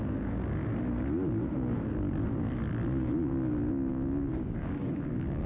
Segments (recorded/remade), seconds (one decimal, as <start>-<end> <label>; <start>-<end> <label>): 0.0-0.6 remade; 0.6-3.9 recorded; 3.9-5.5 remade

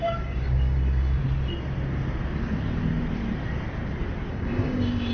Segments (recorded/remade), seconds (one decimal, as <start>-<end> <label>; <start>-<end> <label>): 0.0-1.2 remade; 1.2-4.3 recorded; 4.3-5.1 remade

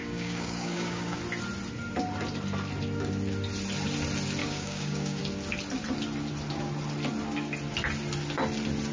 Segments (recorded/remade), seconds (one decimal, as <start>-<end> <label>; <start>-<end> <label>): 0.0-1.2 remade; 1.2-4.4 recorded; 4.4-5.2 remade; 5.2-8.9 recorded

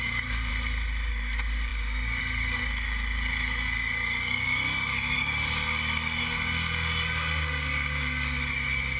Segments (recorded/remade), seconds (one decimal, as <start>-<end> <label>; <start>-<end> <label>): 0.0-0.5 remade; 0.5-1.1 recorded; 1.1-9.0 remade

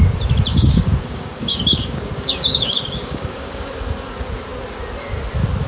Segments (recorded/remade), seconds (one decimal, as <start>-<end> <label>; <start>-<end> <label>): 0.0-0.5 recorded; 0.5-3.7 remade; 3.7-5.7 recorded